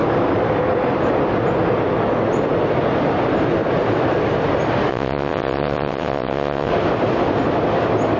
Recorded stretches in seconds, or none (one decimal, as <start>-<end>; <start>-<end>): 0.0-4.9; 6.7-8.2